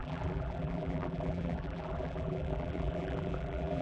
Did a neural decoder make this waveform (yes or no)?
yes